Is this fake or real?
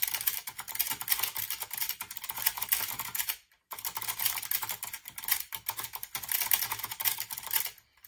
fake